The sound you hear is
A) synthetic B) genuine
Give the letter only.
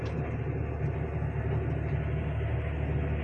B